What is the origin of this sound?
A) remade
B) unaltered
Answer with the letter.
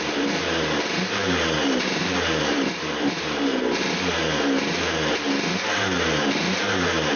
A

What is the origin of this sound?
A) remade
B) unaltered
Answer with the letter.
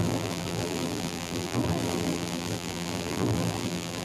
A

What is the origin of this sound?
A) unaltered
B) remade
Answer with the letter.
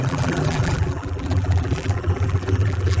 B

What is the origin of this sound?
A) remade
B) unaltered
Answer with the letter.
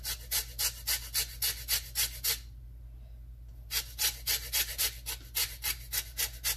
B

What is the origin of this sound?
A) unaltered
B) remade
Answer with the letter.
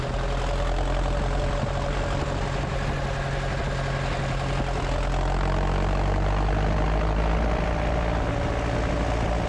A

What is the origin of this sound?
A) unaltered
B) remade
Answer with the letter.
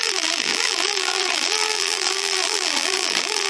B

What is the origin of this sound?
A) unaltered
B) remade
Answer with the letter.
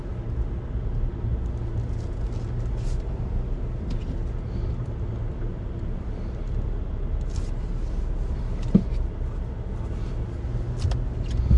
A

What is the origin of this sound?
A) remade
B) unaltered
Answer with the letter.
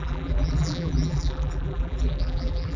A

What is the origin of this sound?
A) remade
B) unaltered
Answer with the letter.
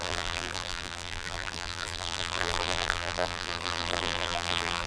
A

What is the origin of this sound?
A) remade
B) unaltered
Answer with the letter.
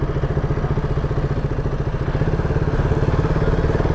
B